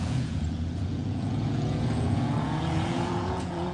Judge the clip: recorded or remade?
remade